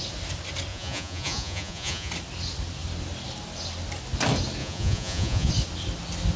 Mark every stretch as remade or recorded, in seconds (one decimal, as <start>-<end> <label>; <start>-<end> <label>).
0.0-0.7 recorded; 0.7-2.1 remade; 2.1-4.6 recorded; 4.6-5.5 remade; 5.5-6.4 recorded